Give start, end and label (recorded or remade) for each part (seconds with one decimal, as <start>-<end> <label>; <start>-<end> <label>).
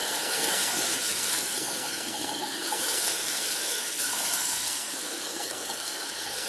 0.0-6.5 remade